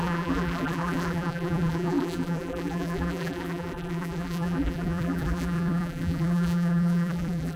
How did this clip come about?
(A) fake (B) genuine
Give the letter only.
A